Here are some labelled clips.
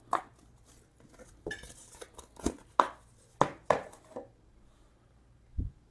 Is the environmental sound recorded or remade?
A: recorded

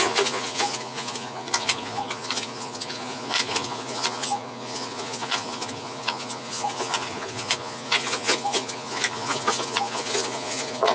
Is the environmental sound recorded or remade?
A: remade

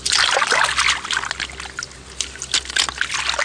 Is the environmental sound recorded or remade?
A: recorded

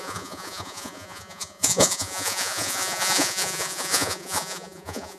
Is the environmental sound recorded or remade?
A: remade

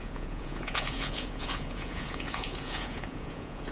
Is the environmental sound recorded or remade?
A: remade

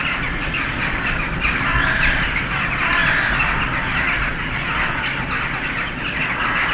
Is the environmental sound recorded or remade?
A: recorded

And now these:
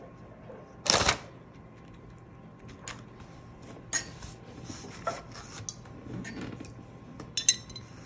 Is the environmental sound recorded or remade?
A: recorded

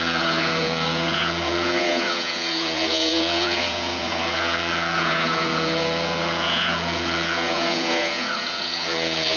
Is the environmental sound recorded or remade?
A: remade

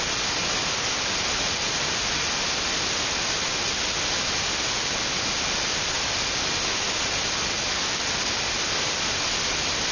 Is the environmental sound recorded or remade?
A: recorded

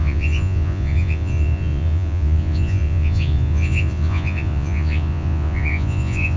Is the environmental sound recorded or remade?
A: remade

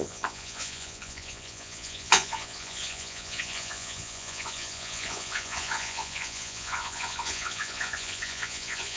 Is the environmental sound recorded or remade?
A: remade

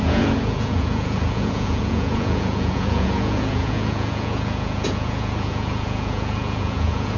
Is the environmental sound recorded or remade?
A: remade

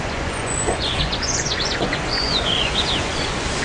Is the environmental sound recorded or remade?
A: remade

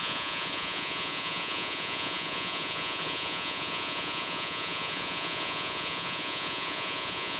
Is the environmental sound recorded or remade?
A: remade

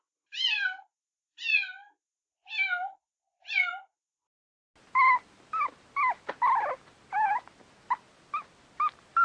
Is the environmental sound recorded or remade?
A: recorded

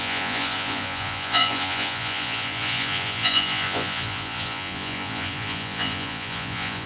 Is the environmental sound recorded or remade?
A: remade